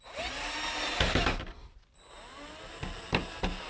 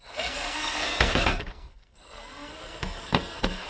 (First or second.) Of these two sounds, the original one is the first